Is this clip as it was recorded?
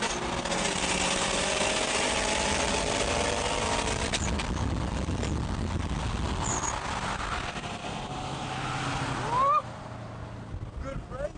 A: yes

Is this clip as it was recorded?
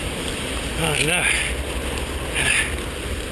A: yes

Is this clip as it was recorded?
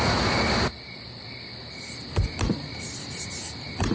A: yes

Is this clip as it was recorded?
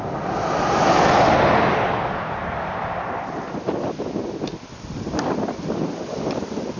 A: yes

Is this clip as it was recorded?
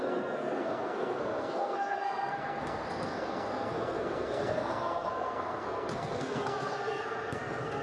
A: no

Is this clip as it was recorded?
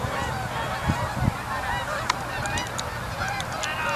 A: yes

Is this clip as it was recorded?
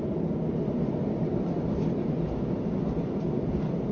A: yes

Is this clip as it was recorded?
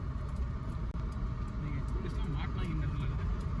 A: yes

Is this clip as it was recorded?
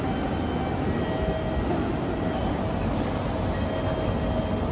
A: yes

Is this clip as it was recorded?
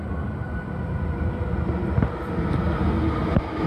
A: yes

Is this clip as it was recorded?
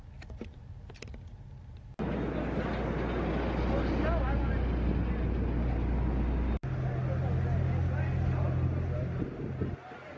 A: yes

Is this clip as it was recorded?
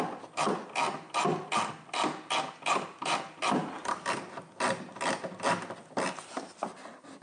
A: yes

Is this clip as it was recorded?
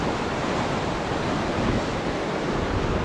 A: yes